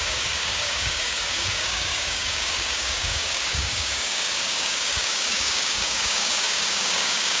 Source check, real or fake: fake